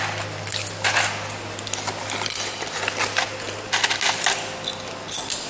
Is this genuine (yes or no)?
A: yes